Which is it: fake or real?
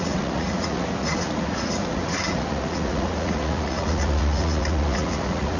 fake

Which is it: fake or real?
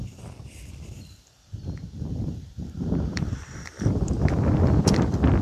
fake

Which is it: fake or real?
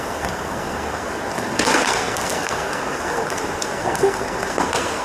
fake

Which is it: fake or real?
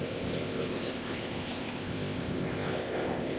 fake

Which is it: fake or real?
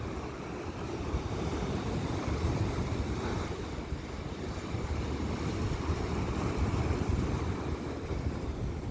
real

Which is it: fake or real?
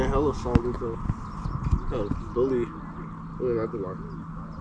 real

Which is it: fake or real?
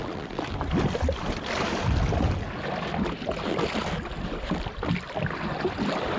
real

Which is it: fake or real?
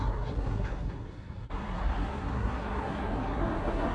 fake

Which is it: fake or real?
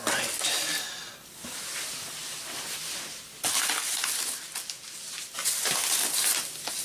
real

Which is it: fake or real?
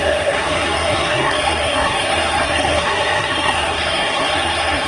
fake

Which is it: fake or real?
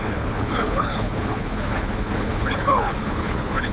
fake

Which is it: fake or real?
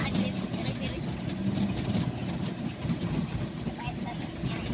real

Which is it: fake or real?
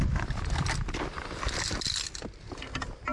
real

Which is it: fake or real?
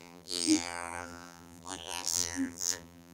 fake